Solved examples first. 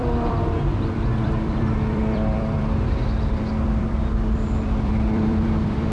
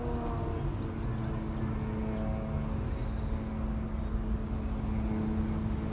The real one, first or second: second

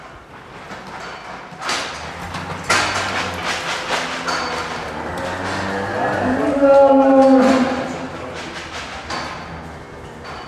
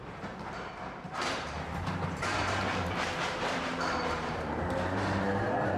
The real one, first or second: first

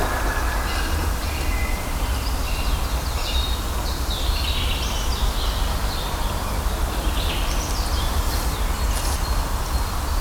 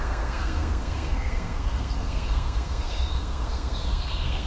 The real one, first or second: first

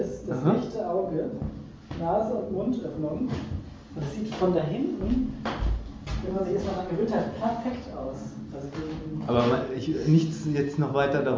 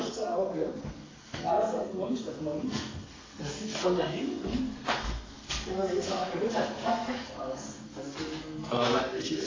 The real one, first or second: first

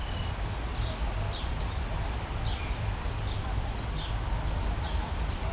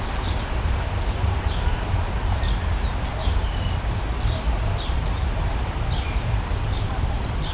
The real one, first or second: first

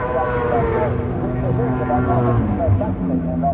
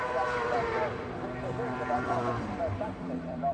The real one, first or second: first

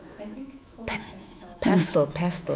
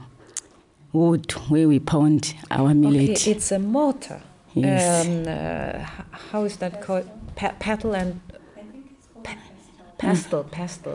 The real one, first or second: second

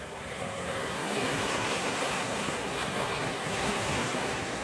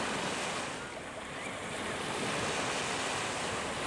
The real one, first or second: second